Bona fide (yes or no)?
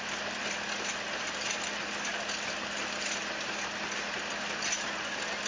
yes